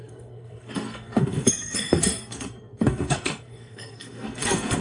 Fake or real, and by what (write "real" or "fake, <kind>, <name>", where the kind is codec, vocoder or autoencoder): fake, codec, SNAC